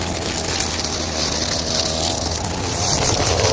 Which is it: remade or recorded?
recorded